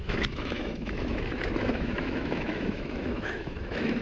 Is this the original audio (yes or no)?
no